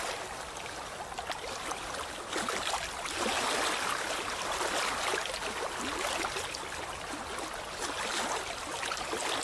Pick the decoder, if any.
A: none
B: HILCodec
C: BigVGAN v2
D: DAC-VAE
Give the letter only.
A